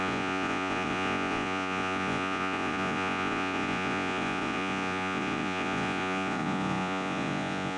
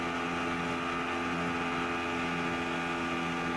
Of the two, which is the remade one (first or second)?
first